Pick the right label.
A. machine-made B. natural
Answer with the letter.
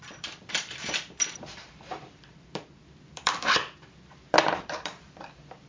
A